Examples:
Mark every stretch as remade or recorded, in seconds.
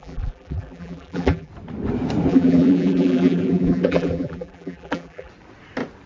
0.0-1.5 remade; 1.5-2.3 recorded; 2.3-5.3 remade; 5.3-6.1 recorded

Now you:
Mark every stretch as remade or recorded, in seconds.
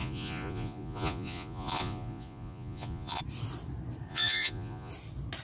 0.0-3.2 remade; 3.2-4.1 recorded; 4.1-4.9 remade; 4.9-5.4 recorded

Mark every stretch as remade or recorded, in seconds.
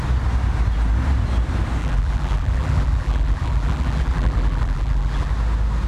0.0-1.8 recorded; 1.8-5.3 remade; 5.3-5.9 recorded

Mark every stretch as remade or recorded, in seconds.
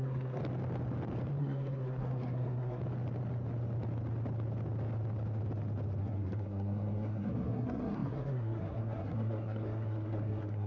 0.0-0.4 remade; 0.4-1.4 recorded; 1.4-2.8 remade; 2.8-6.0 recorded; 6.0-10.7 remade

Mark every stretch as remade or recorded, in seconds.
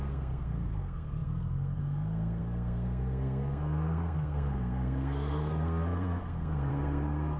0.0-7.4 remade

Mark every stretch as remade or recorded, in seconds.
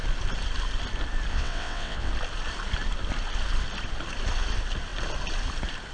0.0-1.3 recorded; 1.3-2.1 remade; 2.1-5.9 recorded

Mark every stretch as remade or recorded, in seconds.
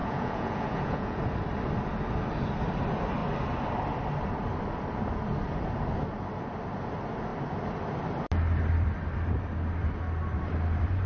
0.0-1.2 remade; 1.2-11.1 recorded